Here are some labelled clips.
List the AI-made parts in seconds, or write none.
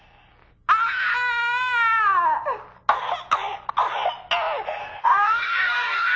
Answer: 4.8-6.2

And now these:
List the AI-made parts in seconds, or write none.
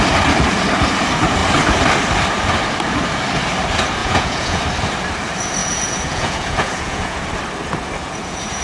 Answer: 4.0-4.6; 5.6-7.2; 8.0-8.6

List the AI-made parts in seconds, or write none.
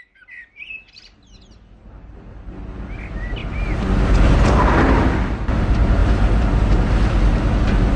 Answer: none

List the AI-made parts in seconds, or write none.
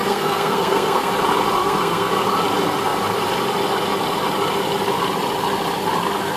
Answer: 0.0-1.1; 1.6-2.1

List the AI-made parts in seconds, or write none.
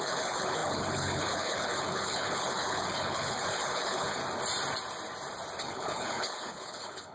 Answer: 0.0-4.2; 5.6-7.1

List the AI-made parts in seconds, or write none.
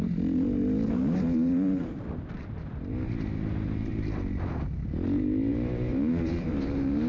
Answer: 5.5-7.1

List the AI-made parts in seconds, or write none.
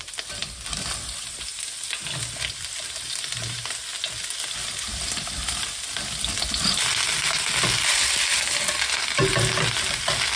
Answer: none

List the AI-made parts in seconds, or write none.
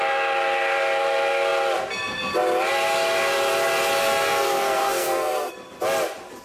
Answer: 4.0-5.5